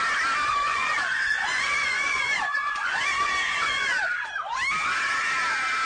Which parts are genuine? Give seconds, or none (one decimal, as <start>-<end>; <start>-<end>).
0.0-0.5; 4.0-5.8